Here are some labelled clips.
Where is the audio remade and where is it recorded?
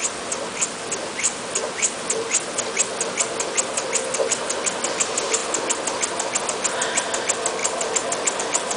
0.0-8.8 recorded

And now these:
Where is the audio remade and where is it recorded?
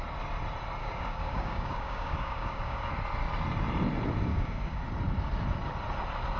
0.0-0.8 recorded; 0.8-2.9 remade; 2.9-4.3 recorded; 4.3-4.8 remade; 4.8-6.4 recorded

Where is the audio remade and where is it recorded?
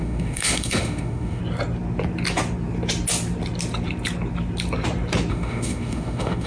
0.0-1.4 remade; 1.4-5.3 recorded; 5.3-6.5 remade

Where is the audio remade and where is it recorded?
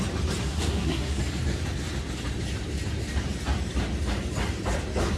0.0-0.4 recorded; 0.4-1.2 remade; 1.2-5.2 recorded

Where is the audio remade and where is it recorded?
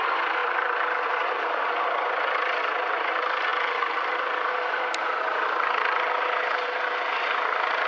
0.0-7.9 remade